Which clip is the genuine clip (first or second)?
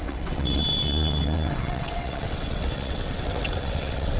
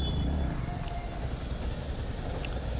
second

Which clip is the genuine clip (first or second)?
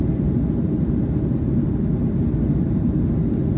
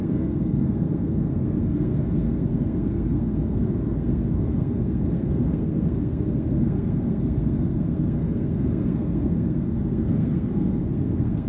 first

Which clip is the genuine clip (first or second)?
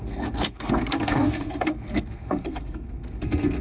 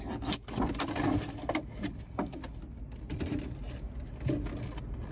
second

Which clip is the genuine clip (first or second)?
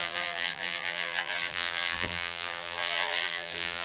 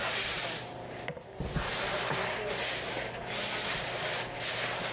second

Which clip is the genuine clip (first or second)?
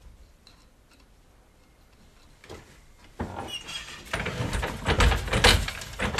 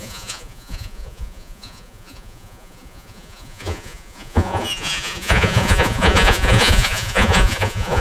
first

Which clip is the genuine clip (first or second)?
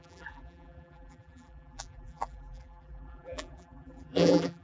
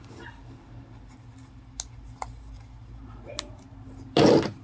second